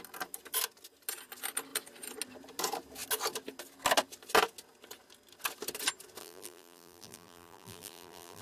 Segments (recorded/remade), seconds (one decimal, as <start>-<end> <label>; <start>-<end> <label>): 0.0-6.2 recorded; 6.2-8.4 remade